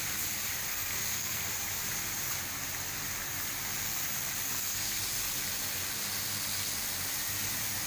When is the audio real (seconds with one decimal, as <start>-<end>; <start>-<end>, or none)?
0.0-0.7; 1.5-4.5; 5.0-7.9